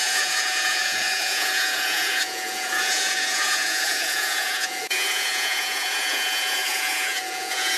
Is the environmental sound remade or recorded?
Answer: remade